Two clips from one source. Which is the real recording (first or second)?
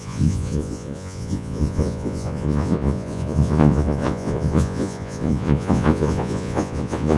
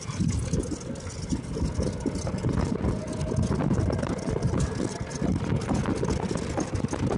second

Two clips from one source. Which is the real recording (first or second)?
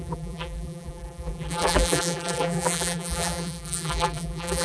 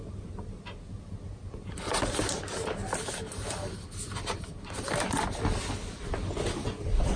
second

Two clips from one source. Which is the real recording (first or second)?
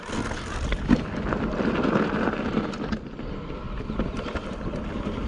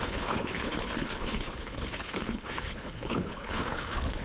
first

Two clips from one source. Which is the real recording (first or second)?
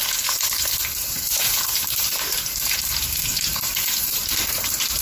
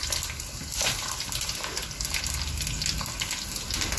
second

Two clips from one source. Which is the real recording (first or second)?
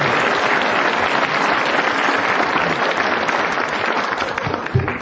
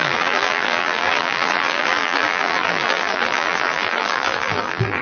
first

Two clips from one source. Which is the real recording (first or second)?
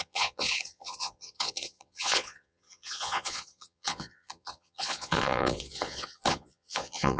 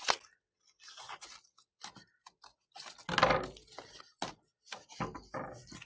second